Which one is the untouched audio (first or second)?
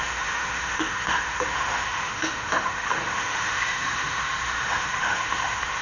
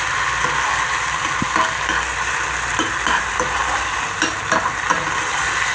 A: second